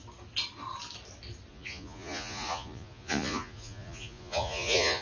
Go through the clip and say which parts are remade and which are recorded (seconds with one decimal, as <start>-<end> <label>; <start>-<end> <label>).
0.0-1.5 recorded; 1.5-5.0 remade